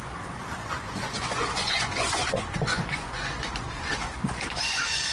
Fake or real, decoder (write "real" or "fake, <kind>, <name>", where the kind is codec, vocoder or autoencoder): fake, vocoder, Vocos